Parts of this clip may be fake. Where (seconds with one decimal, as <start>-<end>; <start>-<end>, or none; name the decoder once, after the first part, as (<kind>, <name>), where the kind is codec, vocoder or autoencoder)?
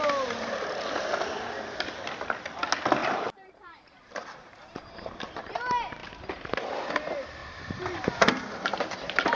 3.0-5.6 (vocoder, BigVGAN v2); 7.4-9.3